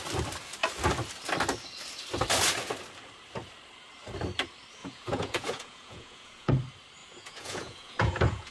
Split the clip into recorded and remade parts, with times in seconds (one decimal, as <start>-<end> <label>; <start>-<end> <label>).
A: 0.0-4.8 recorded; 4.8-6.5 remade; 6.5-7.0 recorded; 7.0-8.5 remade